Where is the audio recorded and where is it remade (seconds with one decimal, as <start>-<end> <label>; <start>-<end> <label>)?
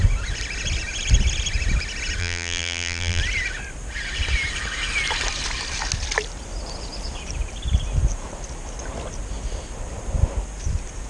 0.0-2.2 recorded; 2.2-3.2 remade; 3.2-11.1 recorded